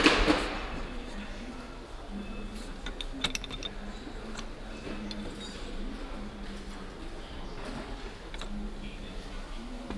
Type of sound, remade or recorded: recorded